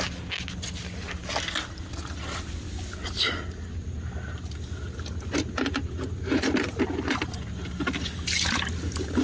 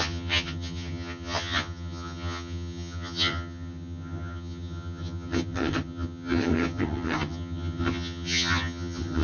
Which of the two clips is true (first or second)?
first